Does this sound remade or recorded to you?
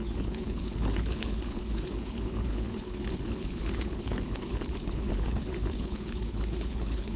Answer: remade